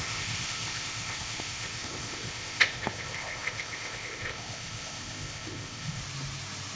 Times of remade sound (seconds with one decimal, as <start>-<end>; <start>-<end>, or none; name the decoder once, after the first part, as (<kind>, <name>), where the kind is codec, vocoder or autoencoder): 0.0-6.0 (codec, ZipCodec)